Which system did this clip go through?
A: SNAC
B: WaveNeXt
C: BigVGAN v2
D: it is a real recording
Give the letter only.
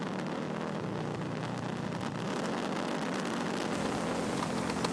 D